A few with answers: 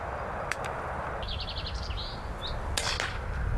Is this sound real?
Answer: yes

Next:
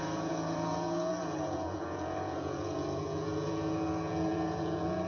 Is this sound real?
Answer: no